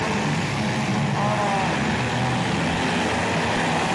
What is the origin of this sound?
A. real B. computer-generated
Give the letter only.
A